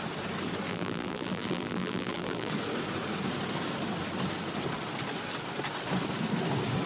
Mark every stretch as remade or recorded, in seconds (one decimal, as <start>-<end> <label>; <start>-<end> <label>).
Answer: 0.0-0.7 recorded; 0.7-2.5 remade; 2.5-6.9 recorded

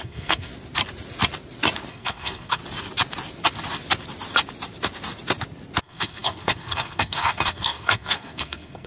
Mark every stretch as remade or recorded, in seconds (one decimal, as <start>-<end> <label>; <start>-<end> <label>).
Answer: 0.0-0.5 remade; 0.5-1.9 recorded; 1.9-2.6 remade; 2.6-5.8 recorded; 5.8-8.9 remade

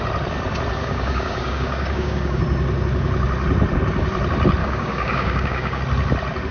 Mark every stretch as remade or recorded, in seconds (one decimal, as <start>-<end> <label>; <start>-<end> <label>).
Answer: 0.0-0.8 recorded; 0.8-2.4 remade; 2.4-4.6 recorded; 4.6-5.8 remade; 5.8-6.5 recorded